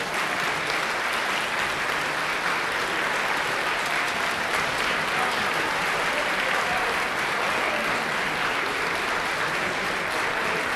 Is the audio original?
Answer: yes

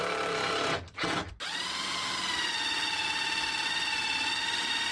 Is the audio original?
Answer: yes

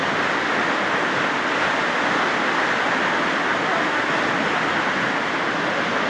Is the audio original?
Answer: yes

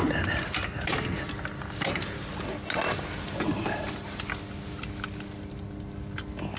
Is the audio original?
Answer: yes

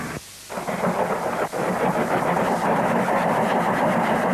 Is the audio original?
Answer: yes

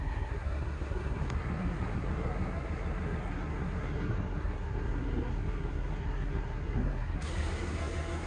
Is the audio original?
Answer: no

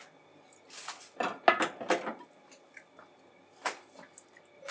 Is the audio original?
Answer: yes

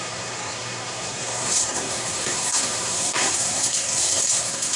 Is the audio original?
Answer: no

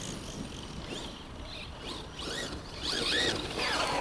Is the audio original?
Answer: yes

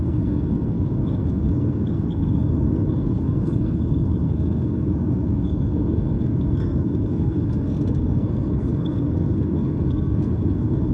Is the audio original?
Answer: no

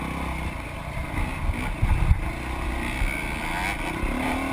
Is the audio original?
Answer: yes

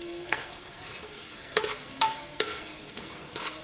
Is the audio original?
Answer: no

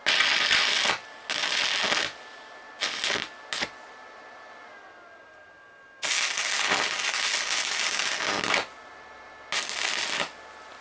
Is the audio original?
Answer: yes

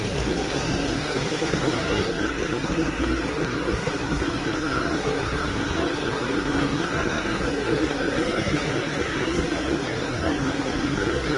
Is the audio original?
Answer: no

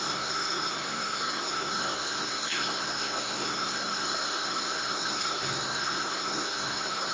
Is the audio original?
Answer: no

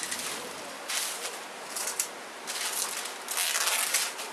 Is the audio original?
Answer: yes